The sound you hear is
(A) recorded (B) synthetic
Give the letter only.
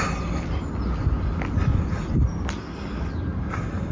A